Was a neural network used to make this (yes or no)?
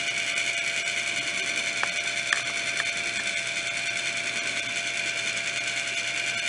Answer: no